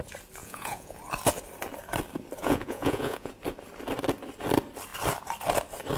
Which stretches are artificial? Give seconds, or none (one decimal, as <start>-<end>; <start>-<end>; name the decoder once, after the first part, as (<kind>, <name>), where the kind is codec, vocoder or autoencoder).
0.4-1.0 (vocoder, Vocos); 2.4-3.3